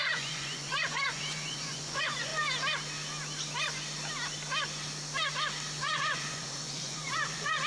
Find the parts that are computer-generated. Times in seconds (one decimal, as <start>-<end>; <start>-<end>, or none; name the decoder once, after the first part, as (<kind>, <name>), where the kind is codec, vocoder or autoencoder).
0.0-2.3 (vocoder, Vocos); 5.8-7.7